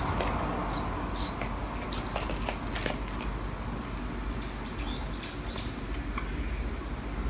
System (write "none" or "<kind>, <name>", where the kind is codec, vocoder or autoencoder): none